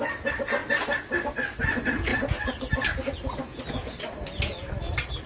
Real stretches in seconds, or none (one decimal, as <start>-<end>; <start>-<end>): 0.0-5.3